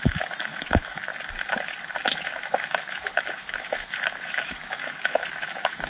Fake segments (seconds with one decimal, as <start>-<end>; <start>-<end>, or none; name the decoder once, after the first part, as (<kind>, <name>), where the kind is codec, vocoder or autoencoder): 0.0-1.1 (autoencoder, DAC-VAE); 2.2-5.9